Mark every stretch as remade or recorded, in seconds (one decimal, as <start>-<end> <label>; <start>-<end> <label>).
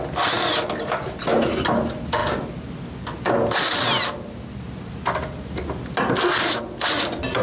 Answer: 0.0-7.4 recorded